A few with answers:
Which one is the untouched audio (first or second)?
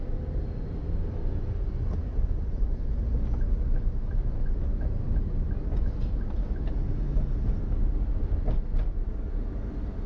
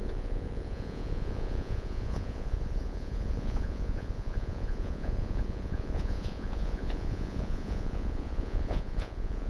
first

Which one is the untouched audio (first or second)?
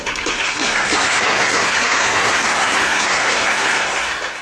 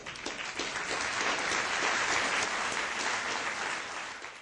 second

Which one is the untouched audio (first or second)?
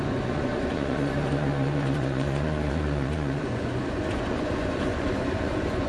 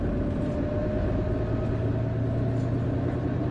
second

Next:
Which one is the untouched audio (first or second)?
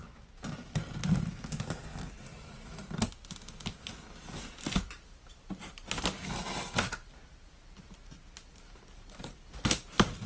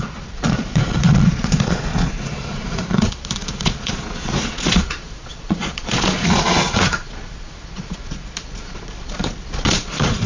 first